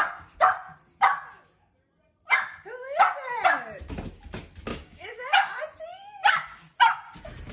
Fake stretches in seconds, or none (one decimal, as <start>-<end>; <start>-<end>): 4.7-5.6

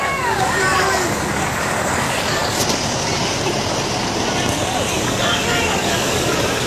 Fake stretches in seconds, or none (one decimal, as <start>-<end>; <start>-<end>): 0.0-2.4; 4.9-6.7

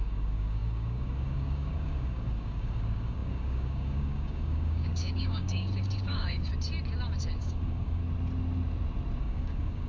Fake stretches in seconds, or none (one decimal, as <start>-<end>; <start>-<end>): 0.0-6.5; 7.4-8.0; 9.2-9.9

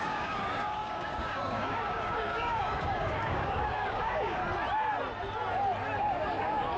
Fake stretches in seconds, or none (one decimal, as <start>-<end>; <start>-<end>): 0.0-4.4; 6.0-6.8

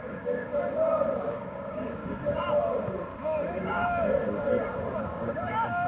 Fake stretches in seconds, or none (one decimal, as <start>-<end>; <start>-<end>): 0.0-0.5; 1.2-2.0; 3.5-4.2; 5.0-5.9

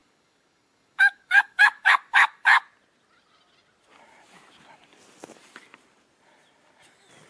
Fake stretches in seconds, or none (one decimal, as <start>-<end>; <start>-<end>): 0.0-2.6

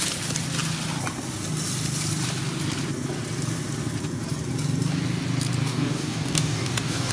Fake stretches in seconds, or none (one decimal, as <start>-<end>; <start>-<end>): 5.6-7.1